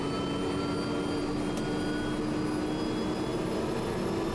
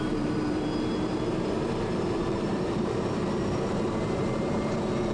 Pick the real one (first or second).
first